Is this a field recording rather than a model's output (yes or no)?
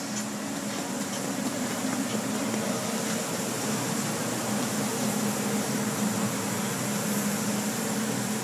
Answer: yes